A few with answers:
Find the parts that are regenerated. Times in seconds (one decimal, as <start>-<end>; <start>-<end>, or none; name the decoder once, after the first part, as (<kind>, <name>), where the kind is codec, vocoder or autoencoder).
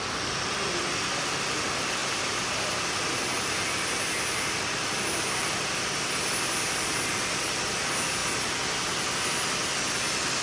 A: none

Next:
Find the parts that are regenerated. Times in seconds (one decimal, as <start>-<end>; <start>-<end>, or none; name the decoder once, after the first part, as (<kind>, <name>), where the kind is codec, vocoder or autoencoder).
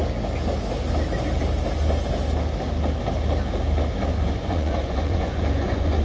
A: 4.1-6.0 (vocoder, Vocos)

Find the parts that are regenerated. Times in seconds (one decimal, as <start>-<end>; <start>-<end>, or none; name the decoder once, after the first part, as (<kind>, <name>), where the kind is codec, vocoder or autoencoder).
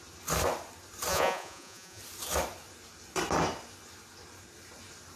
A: 1.1-2.0 (vocoder, Vocos)